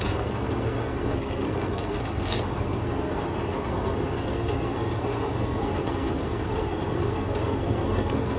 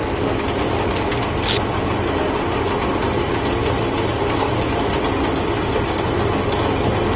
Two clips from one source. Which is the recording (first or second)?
second